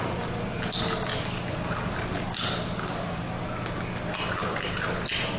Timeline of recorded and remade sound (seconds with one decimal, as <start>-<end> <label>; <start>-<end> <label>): 0.0-5.4 recorded